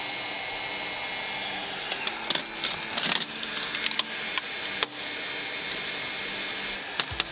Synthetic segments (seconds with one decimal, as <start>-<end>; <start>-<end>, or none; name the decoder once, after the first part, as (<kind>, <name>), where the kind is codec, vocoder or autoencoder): none